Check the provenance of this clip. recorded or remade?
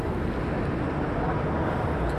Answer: recorded